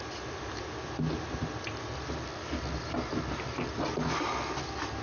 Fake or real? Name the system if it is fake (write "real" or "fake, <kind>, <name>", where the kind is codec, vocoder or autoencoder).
real